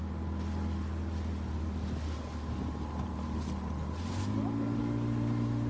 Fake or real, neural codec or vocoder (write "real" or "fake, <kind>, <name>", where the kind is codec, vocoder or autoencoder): real